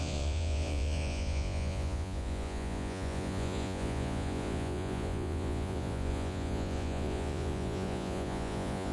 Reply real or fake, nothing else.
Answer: fake